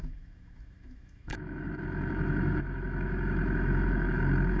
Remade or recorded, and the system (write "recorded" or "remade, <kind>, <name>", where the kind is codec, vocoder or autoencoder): remade, autoencoder, DAC-VAE